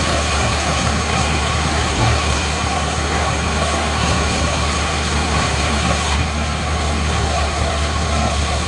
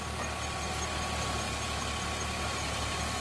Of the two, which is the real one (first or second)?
second